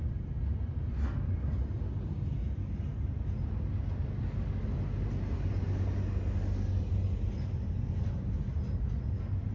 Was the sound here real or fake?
real